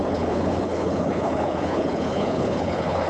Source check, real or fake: fake